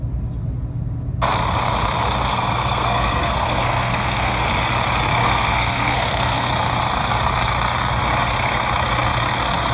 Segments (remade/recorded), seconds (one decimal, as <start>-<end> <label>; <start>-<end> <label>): 0.0-2.3 recorded; 2.3-4.4 remade; 4.4-5.2 recorded; 5.2-6.5 remade; 6.5-9.7 recorded